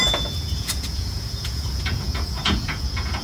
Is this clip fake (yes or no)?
yes